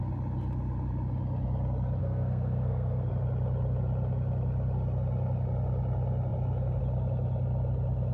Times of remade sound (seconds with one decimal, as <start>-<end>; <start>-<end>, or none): 2.0-3.1